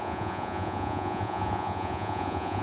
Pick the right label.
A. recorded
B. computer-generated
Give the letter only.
B